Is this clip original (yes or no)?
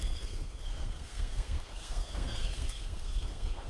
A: no